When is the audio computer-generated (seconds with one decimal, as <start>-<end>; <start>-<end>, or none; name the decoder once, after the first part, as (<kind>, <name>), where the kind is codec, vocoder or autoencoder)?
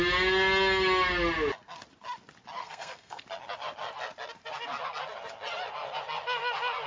2.6-3.2 (codec, SNAC)